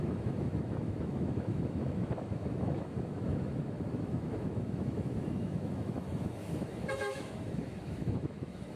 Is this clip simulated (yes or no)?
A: yes